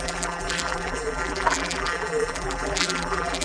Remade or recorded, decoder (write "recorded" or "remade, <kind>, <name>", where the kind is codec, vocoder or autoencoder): remade, vocoder, BigVGAN v2